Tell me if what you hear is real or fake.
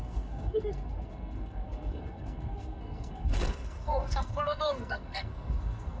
fake